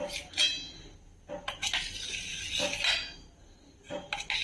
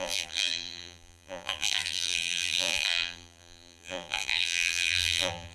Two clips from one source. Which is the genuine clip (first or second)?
first